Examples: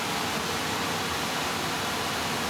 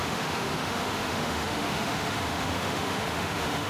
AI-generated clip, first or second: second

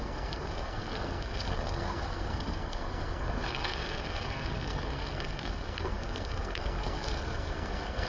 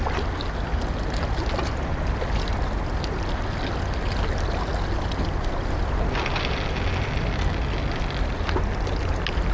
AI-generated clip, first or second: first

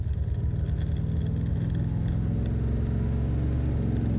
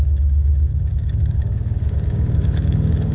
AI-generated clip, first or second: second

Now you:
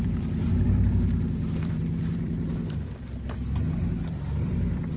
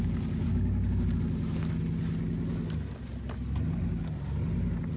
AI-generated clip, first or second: first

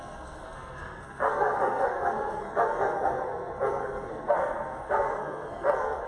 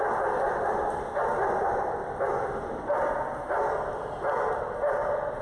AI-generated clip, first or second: first